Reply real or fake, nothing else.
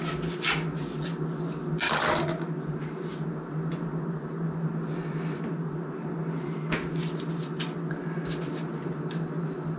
real